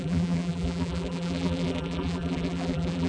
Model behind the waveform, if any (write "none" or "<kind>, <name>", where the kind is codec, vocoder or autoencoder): vocoder, BigVGAN v2